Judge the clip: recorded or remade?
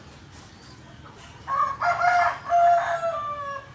recorded